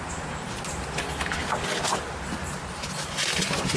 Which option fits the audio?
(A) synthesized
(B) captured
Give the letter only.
B